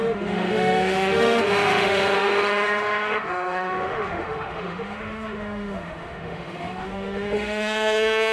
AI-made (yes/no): yes